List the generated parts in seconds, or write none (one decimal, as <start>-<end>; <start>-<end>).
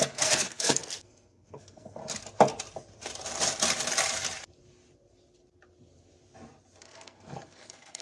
0.0-2.0; 6.8-8.0